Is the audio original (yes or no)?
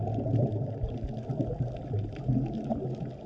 yes